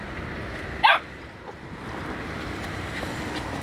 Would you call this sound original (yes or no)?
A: yes